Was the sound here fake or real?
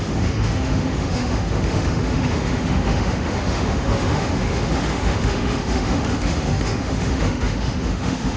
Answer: fake